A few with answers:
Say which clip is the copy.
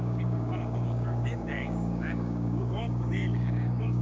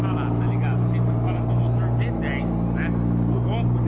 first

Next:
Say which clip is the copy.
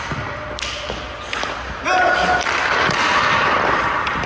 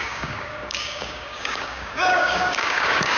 second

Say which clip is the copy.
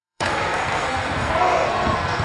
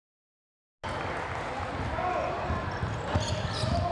first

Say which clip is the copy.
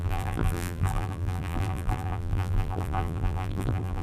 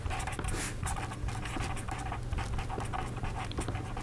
first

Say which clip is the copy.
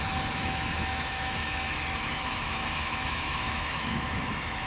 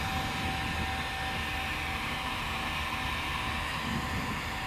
first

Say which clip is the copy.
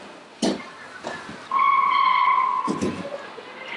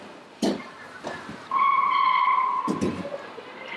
second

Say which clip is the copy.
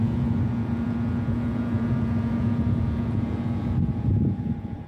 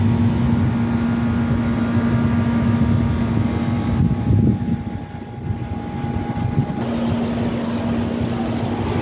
first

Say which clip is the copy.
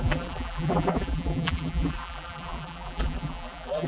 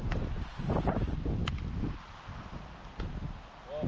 first